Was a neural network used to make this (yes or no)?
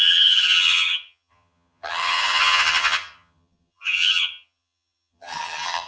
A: yes